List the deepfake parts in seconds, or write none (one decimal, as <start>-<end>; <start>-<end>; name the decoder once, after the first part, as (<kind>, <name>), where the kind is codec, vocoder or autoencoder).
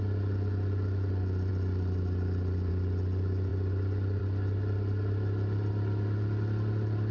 none